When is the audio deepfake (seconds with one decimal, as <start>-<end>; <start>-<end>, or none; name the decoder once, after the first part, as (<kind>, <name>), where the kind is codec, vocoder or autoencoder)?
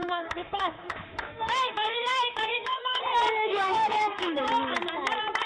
0.0-3.0 (autoencoder, DAC-VAE); 3.4-4.5